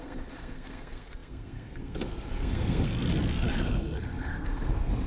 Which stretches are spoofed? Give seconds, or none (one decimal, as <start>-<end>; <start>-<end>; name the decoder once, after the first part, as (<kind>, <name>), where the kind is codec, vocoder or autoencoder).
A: 0.0-2.9 (codec, SNAC); 3.5-5.1